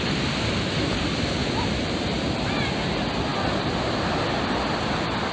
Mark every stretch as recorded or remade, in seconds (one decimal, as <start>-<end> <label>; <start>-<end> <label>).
0.0-1.4 recorded; 1.4-2.9 remade; 2.9-3.3 recorded; 3.3-4.2 remade; 4.2-5.3 recorded